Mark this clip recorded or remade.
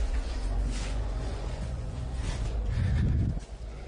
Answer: remade